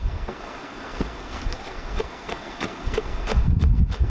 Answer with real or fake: fake